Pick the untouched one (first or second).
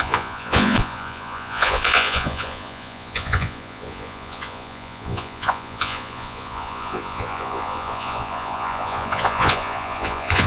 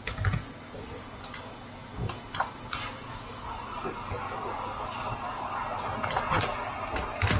second